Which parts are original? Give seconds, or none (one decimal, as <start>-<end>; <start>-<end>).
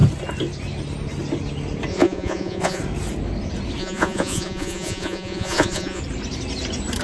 0.0-1.9; 2.8-3.8; 6.0-7.0